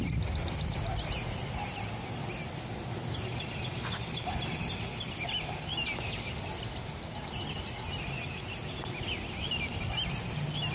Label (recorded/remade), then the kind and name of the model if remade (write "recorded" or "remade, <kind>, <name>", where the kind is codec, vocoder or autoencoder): recorded